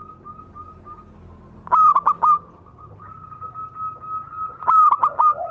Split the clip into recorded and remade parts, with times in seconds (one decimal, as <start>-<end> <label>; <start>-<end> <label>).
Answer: 0.0-5.5 recorded